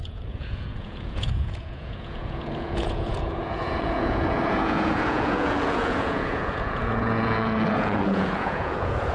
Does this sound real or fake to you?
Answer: fake